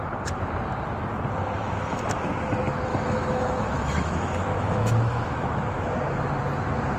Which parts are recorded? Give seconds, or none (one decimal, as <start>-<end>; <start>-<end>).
0.0-1.6; 2.3-2.9; 5.9-7.0